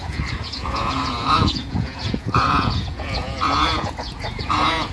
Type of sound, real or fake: fake